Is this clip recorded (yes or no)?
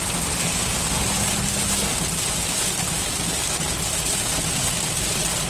yes